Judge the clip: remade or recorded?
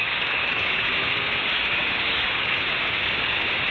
remade